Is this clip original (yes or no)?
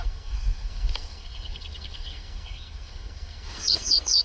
no